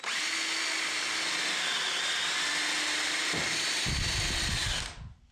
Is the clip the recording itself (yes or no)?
yes